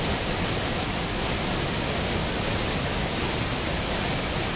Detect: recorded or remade recorded